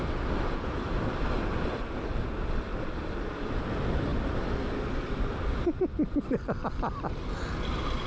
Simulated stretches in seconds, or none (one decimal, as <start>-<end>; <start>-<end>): none